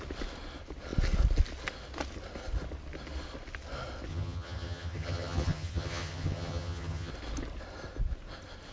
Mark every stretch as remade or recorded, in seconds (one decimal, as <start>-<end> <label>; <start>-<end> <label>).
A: 0.0-4.1 recorded; 4.1-7.1 remade; 7.1-8.7 recorded